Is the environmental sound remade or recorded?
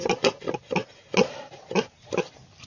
recorded